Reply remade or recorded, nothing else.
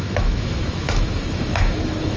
remade